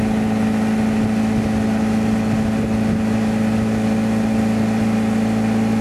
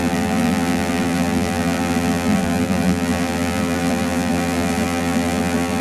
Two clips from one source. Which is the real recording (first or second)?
first